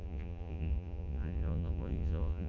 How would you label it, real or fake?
fake